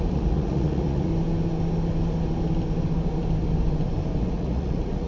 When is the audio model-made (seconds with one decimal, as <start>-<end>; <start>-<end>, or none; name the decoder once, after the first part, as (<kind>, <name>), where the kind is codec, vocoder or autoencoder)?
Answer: 0.0-1.1 (vocoder, Vocos); 4.2-5.1